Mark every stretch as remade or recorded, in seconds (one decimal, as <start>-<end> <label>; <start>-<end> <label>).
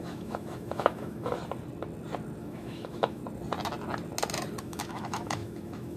0.0-1.4 remade; 1.4-2.4 recorded; 2.4-3.2 remade; 3.2-4.6 recorded; 4.6-6.0 remade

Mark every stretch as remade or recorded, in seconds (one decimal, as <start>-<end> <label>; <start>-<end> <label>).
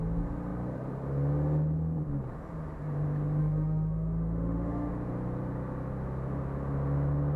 0.0-3.4 recorded; 3.4-4.9 remade; 4.9-7.4 recorded